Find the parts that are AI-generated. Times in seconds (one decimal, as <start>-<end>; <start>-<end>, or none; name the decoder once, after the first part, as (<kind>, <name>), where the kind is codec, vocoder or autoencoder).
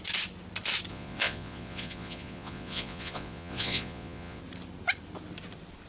0.9-4.4 (vocoder, Vocos)